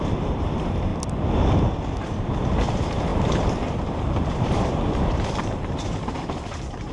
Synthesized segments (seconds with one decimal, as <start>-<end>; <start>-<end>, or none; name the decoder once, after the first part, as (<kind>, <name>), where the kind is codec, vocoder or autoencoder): 0.0-0.9 (vocoder, BigVGAN v2); 2.5-6.9